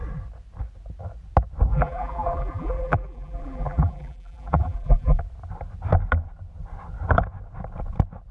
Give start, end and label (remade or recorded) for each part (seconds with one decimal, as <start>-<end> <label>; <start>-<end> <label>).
0.0-1.7 recorded; 1.7-5.2 remade; 5.2-8.3 recorded